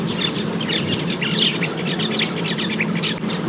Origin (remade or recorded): recorded